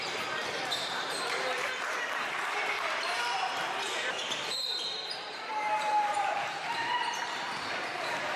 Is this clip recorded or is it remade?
remade